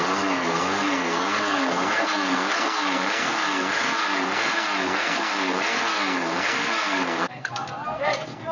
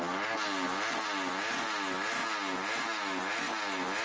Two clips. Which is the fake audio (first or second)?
first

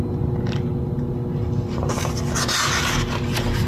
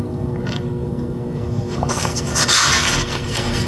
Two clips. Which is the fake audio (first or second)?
second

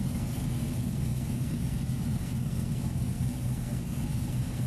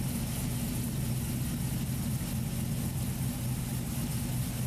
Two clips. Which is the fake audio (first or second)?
first